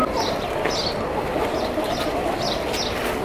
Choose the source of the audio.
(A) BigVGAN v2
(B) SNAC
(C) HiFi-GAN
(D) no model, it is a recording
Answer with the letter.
D